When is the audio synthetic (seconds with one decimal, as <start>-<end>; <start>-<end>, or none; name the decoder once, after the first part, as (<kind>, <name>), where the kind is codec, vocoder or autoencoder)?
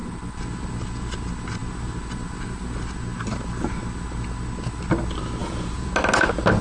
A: 5.4-5.9 (vocoder, Vocos)